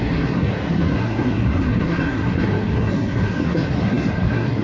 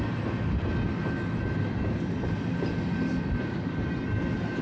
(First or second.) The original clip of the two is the second